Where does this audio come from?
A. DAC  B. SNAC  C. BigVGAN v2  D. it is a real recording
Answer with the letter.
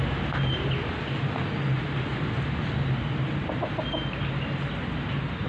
D